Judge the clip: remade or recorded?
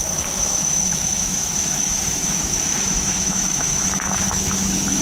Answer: remade